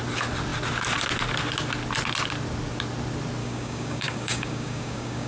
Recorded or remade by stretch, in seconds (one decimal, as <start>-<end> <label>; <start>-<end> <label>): 0.0-3.4 recorded; 3.4-5.3 remade